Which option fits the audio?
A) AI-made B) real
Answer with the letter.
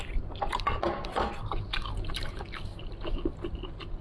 B